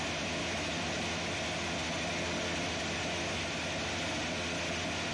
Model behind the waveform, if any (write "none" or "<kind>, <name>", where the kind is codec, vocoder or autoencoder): none